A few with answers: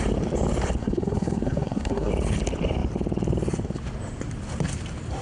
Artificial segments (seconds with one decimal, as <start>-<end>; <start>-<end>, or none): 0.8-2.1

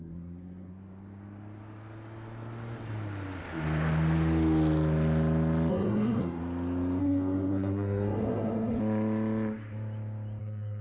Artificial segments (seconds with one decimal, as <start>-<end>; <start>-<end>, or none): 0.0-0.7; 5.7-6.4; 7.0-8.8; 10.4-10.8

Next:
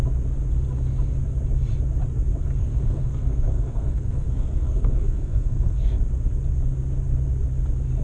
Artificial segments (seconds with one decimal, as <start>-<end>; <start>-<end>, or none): 2.6-6.0

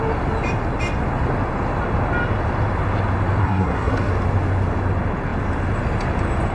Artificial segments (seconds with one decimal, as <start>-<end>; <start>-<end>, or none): 3.4-4.1

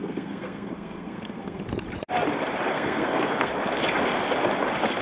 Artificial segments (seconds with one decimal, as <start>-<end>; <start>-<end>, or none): 0.0-1.6; 2.7-3.5

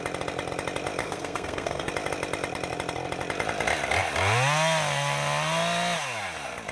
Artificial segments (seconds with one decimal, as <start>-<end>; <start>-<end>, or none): 1.0-1.9

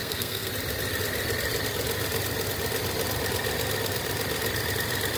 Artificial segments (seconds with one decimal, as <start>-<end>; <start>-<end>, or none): 0.0-0.5

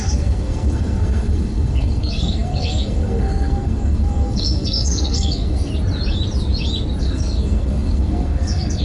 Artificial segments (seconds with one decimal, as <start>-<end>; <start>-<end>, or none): 0.0-5.7; 7.0-8.8